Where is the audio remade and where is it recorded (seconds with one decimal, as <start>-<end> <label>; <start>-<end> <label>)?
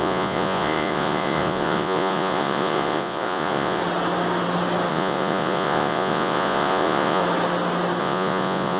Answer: 0.0-3.8 remade; 3.8-4.9 recorded; 4.9-7.2 remade; 7.2-8.0 recorded; 8.0-8.8 remade